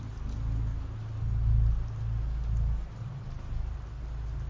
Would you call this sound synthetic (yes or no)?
no